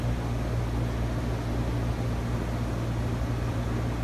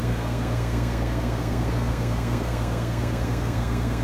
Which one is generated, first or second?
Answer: second